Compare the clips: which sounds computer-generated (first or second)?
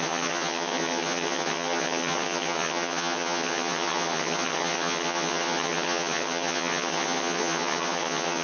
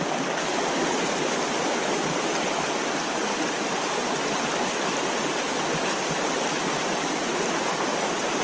first